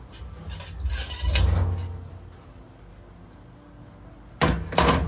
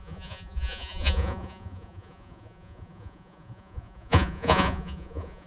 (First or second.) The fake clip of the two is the second